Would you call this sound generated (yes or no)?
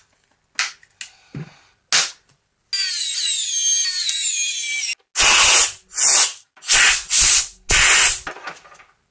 no